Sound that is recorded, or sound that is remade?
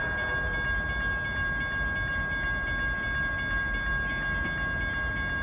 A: recorded